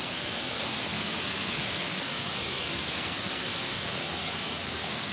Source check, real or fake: fake